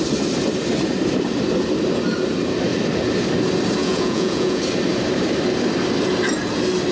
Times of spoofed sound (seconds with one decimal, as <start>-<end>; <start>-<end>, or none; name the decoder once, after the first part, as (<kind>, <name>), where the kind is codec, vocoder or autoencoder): 3.8-4.6 (vocoder, Vocos)